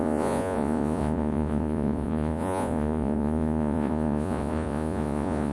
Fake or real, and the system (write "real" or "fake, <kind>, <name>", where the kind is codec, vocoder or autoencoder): fake, vocoder, Vocos